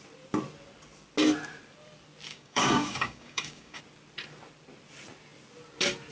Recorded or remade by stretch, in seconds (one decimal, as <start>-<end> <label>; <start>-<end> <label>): 0.0-2.3 recorded; 2.3-3.8 remade; 3.8-6.1 recorded